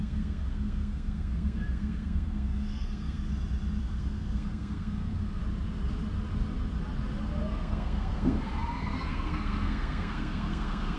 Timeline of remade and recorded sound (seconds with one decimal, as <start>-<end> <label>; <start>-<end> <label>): 0.0-3.3 remade; 3.3-3.8 recorded; 3.8-5.4 remade; 5.4-7.4 recorded; 7.4-11.0 remade